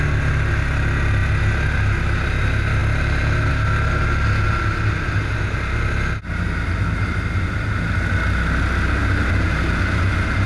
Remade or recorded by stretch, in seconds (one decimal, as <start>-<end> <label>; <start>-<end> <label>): 0.0-9.0 recorded; 9.0-10.0 remade; 10.0-10.5 recorded